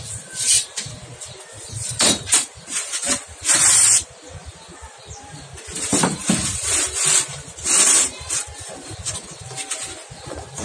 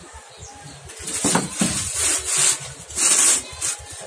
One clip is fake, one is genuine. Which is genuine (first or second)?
second